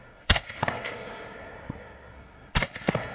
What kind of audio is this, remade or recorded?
remade